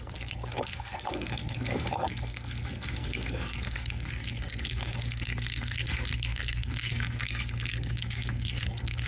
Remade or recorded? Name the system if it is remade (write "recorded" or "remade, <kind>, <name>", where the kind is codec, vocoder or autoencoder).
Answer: remade, codec, SNAC